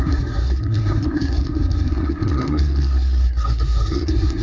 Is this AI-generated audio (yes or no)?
yes